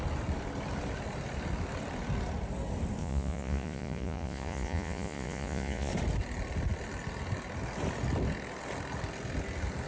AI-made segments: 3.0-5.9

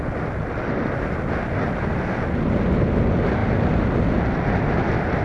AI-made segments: none